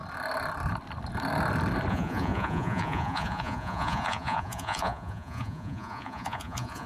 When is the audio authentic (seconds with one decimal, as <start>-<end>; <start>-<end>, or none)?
0.0-1.9